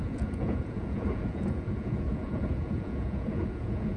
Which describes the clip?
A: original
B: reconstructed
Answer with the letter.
B